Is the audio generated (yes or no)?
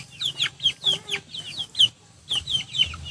no